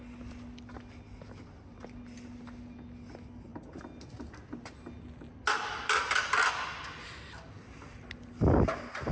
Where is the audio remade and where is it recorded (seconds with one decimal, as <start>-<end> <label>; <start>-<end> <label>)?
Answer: 0.0-9.1 recorded